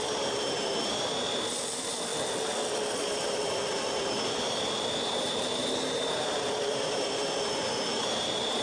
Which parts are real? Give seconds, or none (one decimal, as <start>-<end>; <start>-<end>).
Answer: 2.1-2.7